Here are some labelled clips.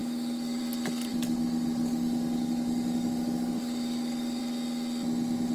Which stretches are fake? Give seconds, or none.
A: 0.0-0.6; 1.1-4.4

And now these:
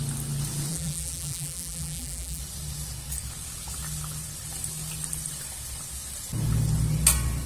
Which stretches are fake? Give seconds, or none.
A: 0.7-2.4

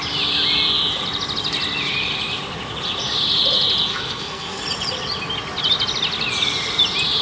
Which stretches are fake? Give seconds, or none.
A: 3.9-4.6